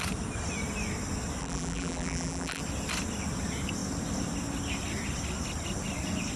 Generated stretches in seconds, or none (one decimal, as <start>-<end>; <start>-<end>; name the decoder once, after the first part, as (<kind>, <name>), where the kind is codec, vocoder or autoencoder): 1.4-2.6 (vocoder, BigVGAN v2)